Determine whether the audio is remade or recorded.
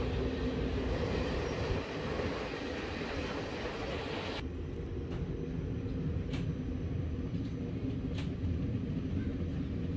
recorded